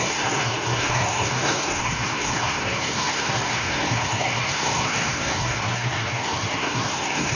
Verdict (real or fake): fake